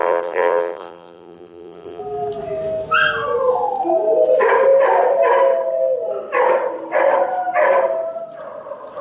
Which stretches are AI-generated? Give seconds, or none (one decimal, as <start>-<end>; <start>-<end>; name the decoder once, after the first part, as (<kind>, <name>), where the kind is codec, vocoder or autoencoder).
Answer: 0.0-2.0 (vocoder, BigVGAN v2)

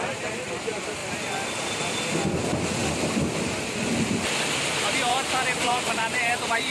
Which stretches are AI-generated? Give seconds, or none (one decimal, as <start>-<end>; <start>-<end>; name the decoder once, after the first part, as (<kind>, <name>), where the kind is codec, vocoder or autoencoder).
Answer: 0.0-1.0 (vocoder, BigVGAN v2); 4.0-6.7

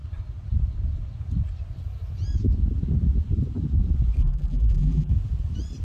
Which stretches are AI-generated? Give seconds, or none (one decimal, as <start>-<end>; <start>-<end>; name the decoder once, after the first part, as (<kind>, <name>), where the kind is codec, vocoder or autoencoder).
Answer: 4.2-5.1 (vocoder, BigVGAN v2)

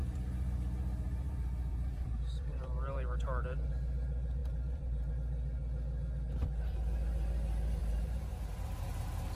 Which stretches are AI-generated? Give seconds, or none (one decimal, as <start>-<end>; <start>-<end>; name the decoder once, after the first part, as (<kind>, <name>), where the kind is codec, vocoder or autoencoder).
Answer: 0.0-3.7 (vocoder, BigVGAN v2); 4.4-5.1; 7.8-8.5

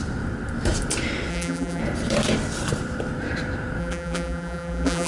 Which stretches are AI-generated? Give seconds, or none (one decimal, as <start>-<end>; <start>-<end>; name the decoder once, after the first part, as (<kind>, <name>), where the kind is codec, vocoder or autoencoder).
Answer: 1.3-1.8 (vocoder, BigVGAN v2); 3.8-5.1

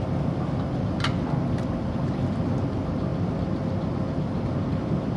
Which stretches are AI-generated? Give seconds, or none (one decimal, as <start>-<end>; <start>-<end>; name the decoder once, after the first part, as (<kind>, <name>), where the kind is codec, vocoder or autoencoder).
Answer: none